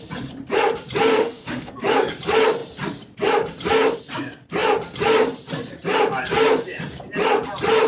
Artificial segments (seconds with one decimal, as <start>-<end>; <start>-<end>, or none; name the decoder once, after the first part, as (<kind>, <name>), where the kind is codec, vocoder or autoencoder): 1.1-1.7 (autoencoder, DAC-VAE)